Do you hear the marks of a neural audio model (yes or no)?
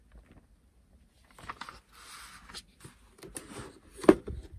no